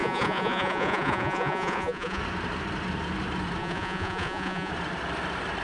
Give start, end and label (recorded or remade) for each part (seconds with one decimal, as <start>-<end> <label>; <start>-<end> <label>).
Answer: 0.0-2.2 remade; 2.2-3.6 recorded; 3.6-4.7 remade; 4.7-5.6 recorded